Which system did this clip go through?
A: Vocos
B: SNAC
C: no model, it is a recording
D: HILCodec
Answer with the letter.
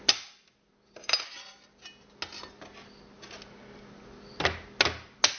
C